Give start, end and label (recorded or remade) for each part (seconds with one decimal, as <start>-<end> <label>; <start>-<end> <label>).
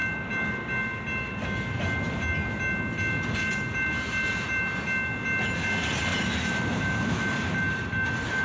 0.0-6.1 recorded; 6.1-7.3 remade; 7.3-8.4 recorded